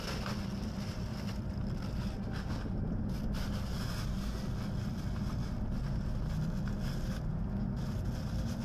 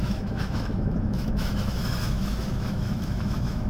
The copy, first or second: second